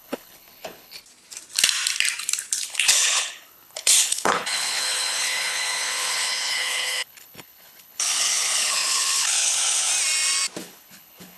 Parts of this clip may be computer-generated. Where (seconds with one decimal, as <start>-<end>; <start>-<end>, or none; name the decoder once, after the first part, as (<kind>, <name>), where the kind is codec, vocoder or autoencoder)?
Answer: 0.0-1.0 (codec, HILCodec); 2.6-9.9; 10.6-11.4